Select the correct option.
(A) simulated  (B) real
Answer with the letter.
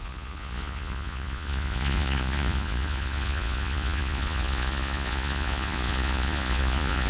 A